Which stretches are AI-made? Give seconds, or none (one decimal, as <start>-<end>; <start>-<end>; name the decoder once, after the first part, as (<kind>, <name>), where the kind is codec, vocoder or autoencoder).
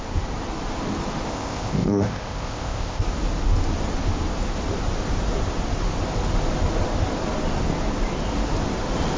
1.3-3.0 (codec, ZipCodec)